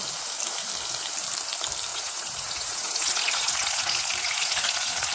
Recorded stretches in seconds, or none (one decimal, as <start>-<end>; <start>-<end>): 0.0-1.9